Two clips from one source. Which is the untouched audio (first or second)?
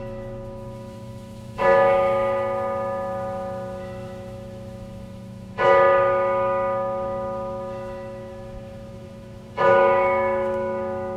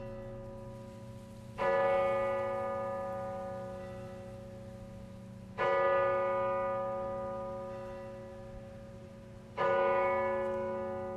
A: second